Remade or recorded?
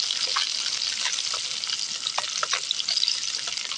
recorded